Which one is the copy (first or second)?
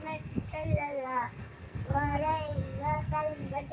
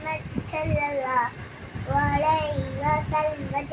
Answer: first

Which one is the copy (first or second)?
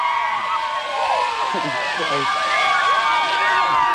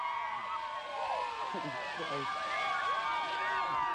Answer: first